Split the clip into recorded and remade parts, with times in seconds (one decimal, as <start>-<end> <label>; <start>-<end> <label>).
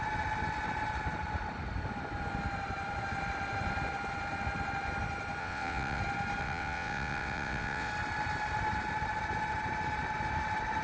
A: 0.0-5.4 recorded; 5.4-6.0 remade; 6.0-6.4 recorded; 6.4-7.9 remade; 7.9-10.8 recorded